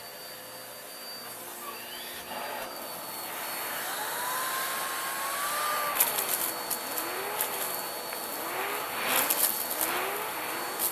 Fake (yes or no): no